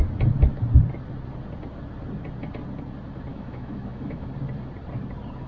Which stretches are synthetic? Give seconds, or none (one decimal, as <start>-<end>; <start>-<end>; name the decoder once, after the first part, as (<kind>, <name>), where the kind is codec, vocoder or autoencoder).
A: 3.3-4.3 (autoencoder, DAC-VAE)